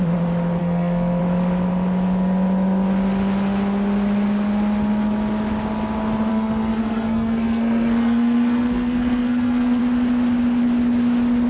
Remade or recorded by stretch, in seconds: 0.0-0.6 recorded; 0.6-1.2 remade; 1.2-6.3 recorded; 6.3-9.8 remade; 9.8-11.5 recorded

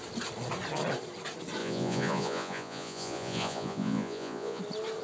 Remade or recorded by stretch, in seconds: 0.0-1.6 recorded; 1.6-4.6 remade; 4.6-5.0 recorded

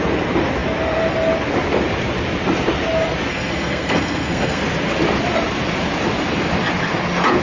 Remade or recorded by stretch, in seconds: 0.0-3.3 recorded; 3.3-4.6 remade; 4.6-7.4 recorded

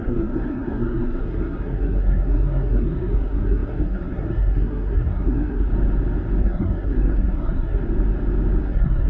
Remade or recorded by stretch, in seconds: 0.0-5.7 remade; 5.7-6.4 recorded; 6.4-7.8 remade; 7.8-8.6 recorded; 8.6-9.1 remade